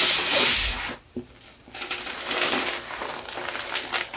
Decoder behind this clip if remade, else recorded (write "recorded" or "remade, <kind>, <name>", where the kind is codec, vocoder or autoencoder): recorded